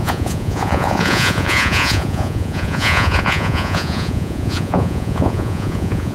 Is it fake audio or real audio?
fake